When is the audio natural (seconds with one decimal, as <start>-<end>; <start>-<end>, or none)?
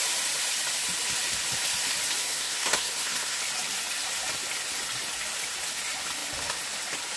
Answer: 0.0-2.2; 3.4-7.2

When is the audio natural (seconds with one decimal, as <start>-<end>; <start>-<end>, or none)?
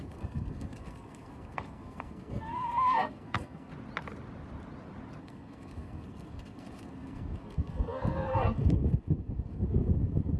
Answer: 3.7-5.2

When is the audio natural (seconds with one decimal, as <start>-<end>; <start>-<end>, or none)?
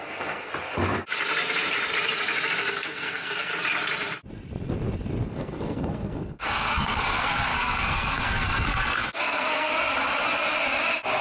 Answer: 0.5-2.7; 3.5-5.3; 9.7-11.2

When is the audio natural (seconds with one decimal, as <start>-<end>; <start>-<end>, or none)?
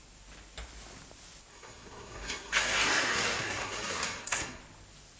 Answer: 0.0-1.5; 4.6-5.2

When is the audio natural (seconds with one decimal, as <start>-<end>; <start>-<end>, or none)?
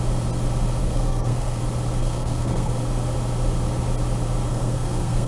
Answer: 0.0-0.8; 1.6-2.0; 2.7-4.5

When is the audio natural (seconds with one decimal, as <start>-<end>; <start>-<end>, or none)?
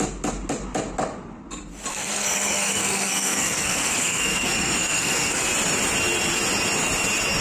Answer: 0.0-1.9; 5.4-7.4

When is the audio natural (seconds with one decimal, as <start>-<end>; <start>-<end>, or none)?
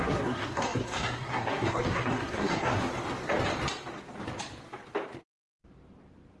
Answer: 2.9-6.4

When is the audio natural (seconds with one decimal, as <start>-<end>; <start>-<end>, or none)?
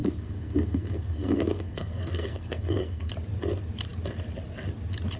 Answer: 3.1-5.2